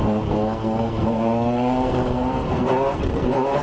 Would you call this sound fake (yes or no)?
yes